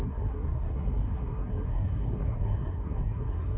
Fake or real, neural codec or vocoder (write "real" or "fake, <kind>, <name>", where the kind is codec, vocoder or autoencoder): fake, codec, SNAC